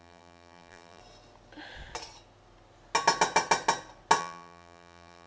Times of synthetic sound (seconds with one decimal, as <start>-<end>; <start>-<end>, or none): 0.0-1.0; 4.2-5.3